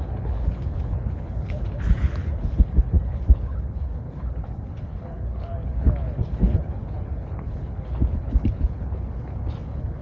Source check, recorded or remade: remade